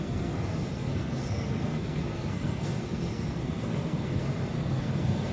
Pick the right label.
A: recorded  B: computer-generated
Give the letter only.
B